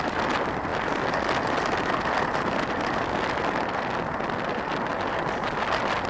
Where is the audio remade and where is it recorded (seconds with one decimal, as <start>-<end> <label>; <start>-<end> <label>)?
0.0-6.1 recorded